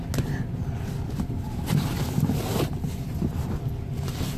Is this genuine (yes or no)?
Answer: yes